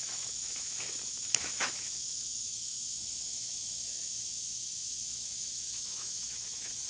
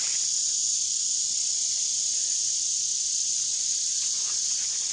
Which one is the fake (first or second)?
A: first